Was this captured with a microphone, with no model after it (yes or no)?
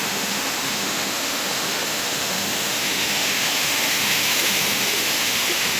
no